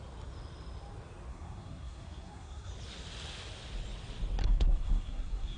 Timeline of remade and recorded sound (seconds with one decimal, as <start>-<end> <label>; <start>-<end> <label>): 0.0-1.3 recorded; 1.3-2.7 remade; 2.7-4.4 recorded; 4.4-5.6 remade